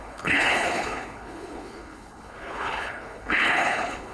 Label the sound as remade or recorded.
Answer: remade